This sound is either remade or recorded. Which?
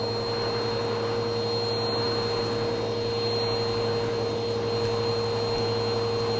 recorded